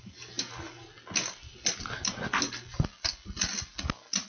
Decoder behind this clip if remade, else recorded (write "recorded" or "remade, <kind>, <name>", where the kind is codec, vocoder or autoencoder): recorded